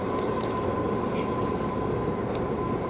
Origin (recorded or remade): recorded